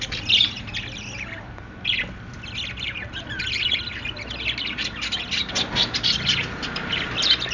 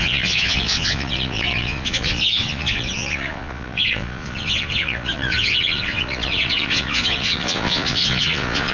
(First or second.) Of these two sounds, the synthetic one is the second